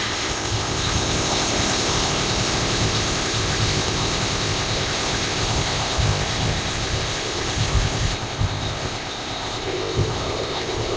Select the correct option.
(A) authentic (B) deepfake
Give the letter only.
B